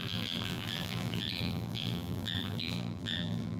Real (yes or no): no